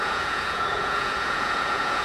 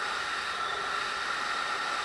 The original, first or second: second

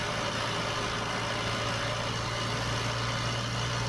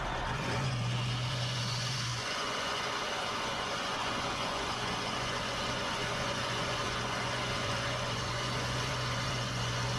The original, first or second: first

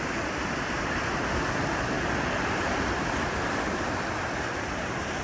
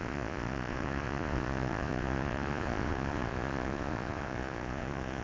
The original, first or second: first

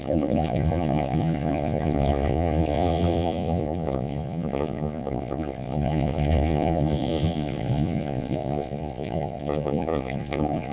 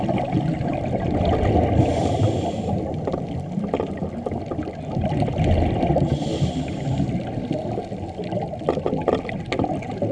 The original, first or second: second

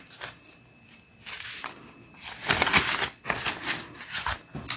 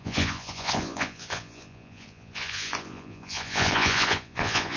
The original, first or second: first